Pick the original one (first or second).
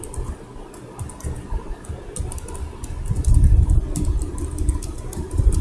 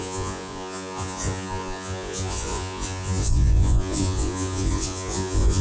first